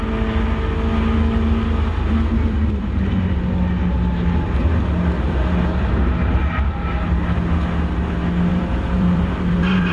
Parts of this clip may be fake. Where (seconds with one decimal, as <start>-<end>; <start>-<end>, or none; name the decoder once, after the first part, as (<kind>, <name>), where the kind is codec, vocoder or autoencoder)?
8.5-9.9 (vocoder, BigVGAN v2)